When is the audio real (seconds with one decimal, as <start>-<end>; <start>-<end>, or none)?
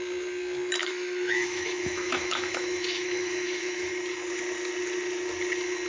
0.0-0.8; 3.9-5.9